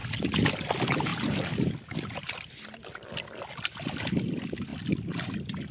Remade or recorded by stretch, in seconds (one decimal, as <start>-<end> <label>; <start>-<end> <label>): 0.0-5.7 recorded